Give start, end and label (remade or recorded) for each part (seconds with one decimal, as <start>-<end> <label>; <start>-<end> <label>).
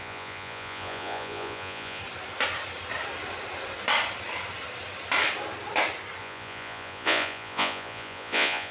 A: 0.0-2.0 remade; 2.0-6.2 recorded; 6.2-8.7 remade